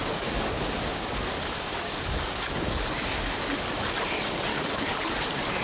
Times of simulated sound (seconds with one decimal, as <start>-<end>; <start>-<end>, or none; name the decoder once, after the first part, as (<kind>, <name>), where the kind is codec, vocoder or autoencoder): 0.0-3.4 (codec, DAC); 4.5-5.0